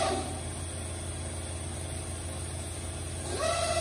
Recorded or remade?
recorded